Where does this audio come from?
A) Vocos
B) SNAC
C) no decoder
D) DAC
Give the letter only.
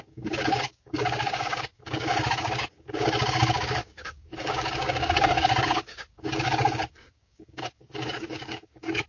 D